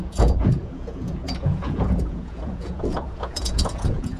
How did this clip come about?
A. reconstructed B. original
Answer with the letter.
A